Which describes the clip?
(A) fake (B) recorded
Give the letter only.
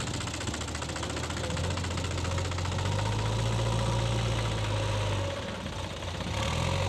B